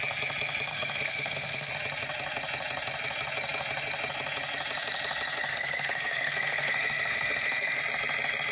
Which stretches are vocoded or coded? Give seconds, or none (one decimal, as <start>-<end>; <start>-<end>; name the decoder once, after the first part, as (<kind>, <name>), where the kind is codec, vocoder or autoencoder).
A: 0.7-1.7 (codec, SNAC); 5.5-7.8